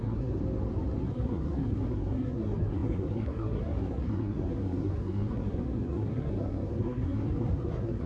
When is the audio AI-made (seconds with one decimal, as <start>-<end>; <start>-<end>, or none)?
0.0-0.4; 1.1-8.1